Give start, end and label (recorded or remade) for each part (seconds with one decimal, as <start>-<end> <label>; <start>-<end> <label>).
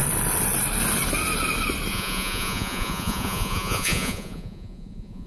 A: 0.0-1.9 recorded; 1.9-5.3 remade